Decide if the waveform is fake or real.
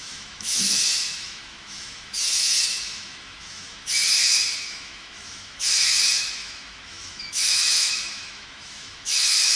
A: fake